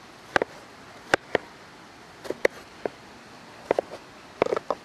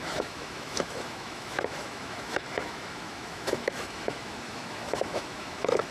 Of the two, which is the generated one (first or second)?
second